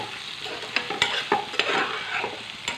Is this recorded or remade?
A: recorded